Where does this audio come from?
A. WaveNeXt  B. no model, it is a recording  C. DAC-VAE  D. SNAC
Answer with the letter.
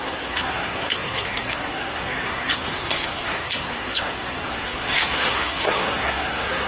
D